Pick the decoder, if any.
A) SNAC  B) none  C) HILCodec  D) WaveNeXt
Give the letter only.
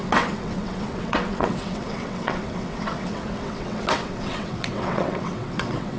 D